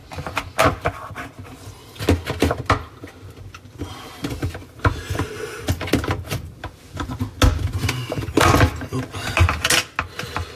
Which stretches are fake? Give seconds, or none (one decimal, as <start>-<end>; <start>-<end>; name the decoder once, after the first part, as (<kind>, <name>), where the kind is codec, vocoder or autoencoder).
none

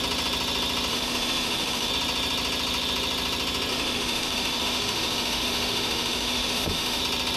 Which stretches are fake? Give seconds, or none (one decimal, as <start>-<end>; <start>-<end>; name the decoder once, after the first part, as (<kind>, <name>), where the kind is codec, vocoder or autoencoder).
0.9-1.9 (autoencoder, DAC-VAE); 3.7-7.0

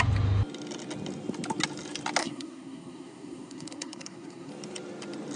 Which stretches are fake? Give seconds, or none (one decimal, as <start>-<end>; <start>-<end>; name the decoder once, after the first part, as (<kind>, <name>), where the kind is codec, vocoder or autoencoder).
2.2-4.5 (codec, SNAC)